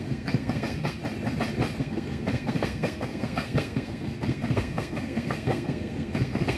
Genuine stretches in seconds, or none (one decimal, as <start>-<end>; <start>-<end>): 1.0-1.8